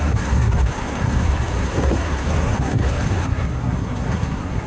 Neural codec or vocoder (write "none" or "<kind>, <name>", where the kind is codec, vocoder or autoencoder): codec, SNAC